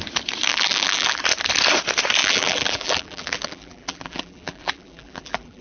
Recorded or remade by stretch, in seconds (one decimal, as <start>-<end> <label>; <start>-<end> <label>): 0.0-0.5 recorded; 0.5-1.2 remade; 1.2-2.2 recorded; 2.2-5.6 remade